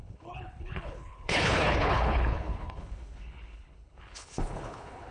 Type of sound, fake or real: fake